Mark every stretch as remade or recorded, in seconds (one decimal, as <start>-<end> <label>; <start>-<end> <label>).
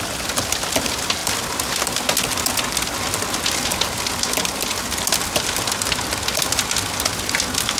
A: 0.0-7.8 recorded